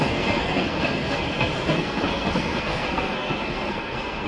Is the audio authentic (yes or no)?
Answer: no